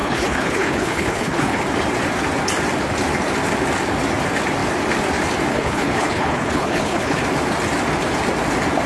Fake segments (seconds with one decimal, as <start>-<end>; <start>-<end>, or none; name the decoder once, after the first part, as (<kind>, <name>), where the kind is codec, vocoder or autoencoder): 0.0-1.6 (codec, HILCodec); 5.5-7.2